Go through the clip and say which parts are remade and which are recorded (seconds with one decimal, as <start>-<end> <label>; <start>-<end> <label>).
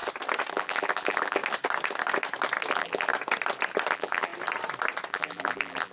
0.0-0.5 recorded; 0.5-1.4 remade; 1.4-2.7 recorded; 2.7-3.1 remade; 3.1-3.9 recorded; 3.9-4.3 remade; 4.3-5.1 recorded; 5.1-5.9 remade